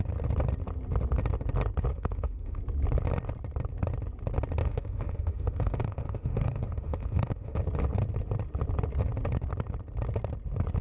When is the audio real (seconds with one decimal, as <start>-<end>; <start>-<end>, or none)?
0.0-1.9; 2.6-4.6; 7.6-10.8